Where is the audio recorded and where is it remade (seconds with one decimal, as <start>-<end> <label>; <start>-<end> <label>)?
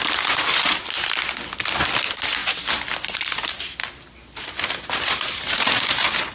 0.0-6.3 recorded